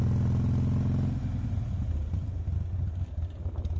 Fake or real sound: real